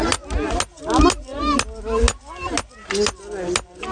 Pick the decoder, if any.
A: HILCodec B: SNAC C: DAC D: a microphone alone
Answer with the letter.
D